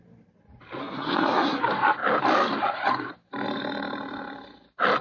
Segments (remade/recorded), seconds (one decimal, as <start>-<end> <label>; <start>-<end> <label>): 0.0-0.8 recorded; 0.8-1.6 remade; 1.6-5.0 recorded